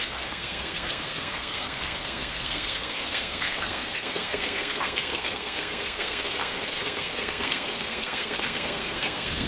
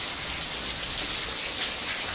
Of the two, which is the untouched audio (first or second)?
second